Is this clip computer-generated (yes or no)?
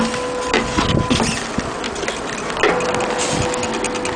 no